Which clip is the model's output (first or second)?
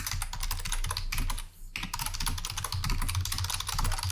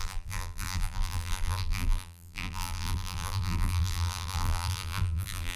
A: second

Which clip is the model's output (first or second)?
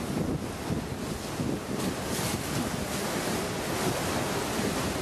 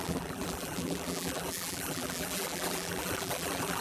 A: second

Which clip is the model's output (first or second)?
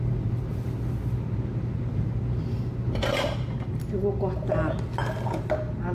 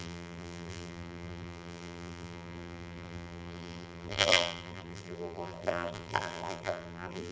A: second